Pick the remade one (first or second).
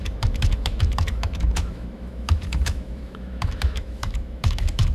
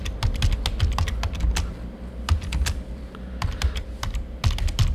first